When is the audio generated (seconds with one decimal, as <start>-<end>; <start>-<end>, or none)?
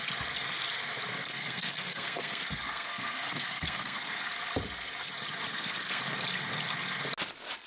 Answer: 1.1-4.3; 5.5-6.0